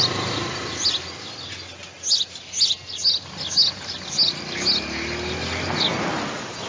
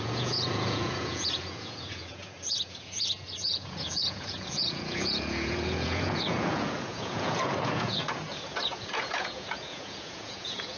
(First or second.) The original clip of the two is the first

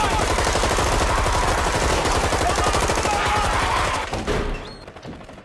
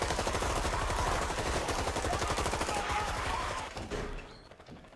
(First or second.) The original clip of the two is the first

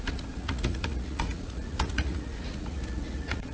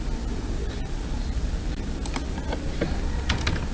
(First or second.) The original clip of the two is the second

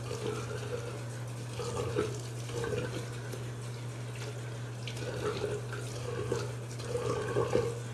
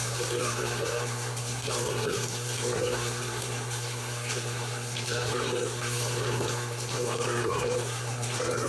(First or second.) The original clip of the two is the first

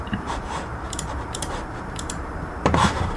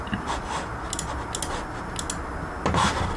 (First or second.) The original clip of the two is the second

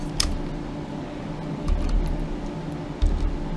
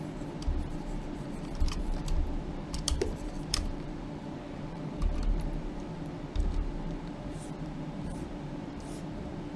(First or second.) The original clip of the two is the first